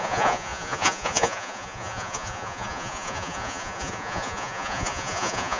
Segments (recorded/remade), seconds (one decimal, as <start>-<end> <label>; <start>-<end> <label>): 0.0-5.6 remade